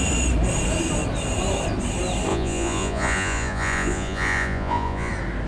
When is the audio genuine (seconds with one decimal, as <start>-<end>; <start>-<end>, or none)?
0.0-2.3; 5.1-5.5